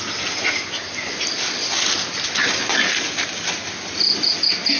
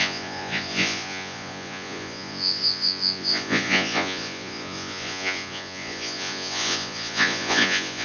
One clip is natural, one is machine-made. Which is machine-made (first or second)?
second